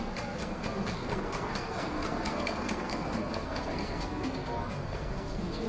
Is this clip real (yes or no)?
no